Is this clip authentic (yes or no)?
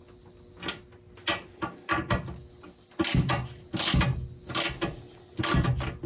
yes